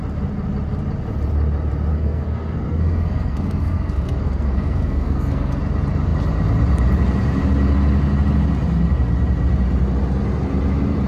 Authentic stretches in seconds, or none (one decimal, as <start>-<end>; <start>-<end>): 0.0-1.9; 5.6-11.1